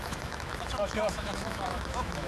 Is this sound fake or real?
fake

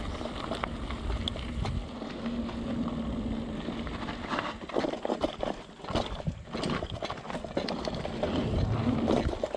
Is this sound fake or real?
real